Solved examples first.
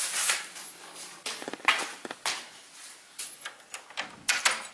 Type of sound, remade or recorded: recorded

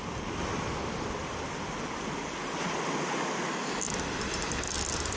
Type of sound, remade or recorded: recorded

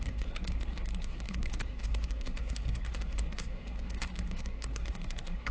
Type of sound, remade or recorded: remade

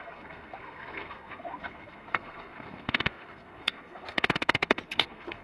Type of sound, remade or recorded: remade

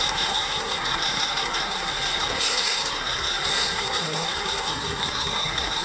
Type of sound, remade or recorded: remade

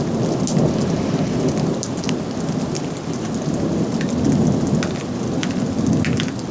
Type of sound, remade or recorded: recorded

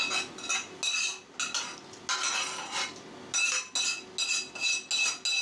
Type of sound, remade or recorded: recorded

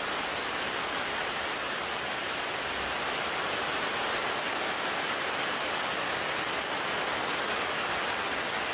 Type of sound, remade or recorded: recorded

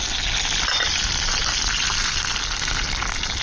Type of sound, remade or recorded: recorded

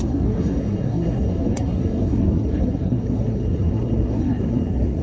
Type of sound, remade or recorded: remade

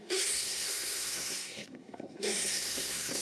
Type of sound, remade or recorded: remade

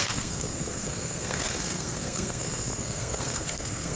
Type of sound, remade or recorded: remade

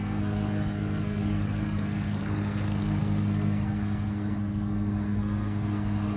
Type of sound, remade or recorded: remade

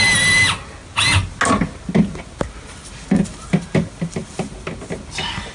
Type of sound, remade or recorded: recorded